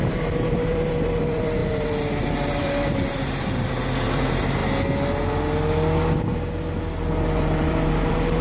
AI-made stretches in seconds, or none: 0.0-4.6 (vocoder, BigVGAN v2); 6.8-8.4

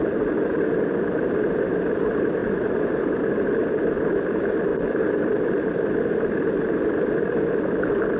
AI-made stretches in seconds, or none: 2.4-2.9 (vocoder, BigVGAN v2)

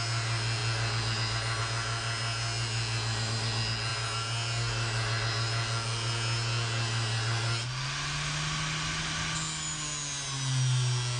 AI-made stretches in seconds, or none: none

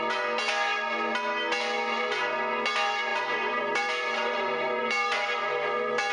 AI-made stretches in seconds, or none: 3.1-5.5 (vocoder, BigVGAN v2)